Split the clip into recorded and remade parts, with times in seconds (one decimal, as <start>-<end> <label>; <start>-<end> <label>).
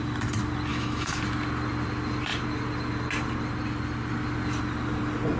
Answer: 0.0-0.7 recorded; 0.7-1.2 remade; 1.2-5.4 recorded